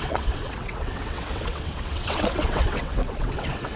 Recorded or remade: remade